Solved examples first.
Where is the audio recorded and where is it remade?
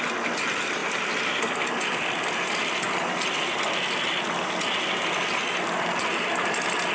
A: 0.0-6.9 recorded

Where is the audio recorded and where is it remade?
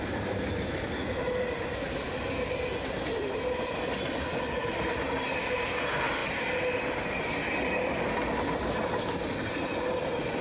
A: 0.0-10.4 recorded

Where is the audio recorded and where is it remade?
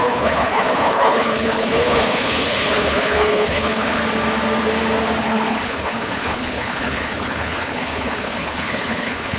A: 0.0-4.0 remade; 4.0-5.2 recorded; 5.2-9.4 remade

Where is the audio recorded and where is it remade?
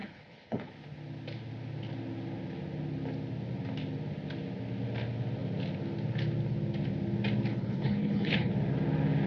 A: 0.0-0.7 remade; 0.7-7.5 recorded; 7.5-8.5 remade; 8.5-9.3 recorded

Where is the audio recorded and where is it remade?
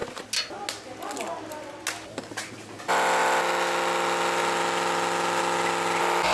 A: 0.0-6.3 recorded